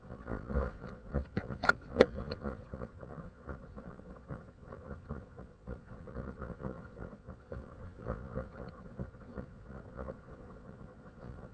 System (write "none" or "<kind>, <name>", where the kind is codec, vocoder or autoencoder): vocoder, Vocos